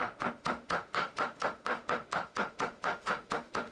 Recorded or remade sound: remade